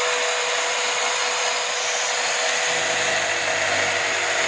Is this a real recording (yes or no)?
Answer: yes